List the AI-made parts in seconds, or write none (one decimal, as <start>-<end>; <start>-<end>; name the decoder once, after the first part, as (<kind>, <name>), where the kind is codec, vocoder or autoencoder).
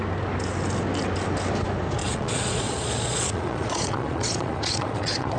2.0-5.4 (vocoder, Vocos)